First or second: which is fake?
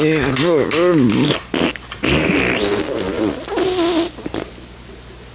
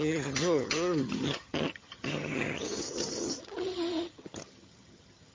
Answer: second